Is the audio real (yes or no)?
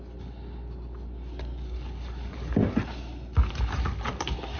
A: yes